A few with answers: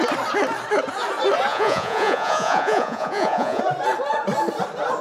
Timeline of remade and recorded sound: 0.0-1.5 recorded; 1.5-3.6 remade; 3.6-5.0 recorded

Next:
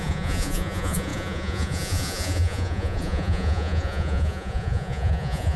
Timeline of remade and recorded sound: 0.0-5.6 remade